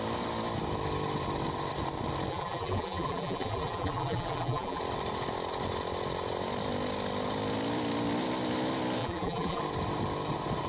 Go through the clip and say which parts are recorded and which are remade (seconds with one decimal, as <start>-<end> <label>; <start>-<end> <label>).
0.0-2.3 recorded; 2.3-4.8 remade; 4.8-9.0 recorded; 9.0-9.6 remade; 9.6-10.7 recorded